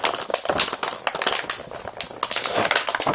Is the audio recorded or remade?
recorded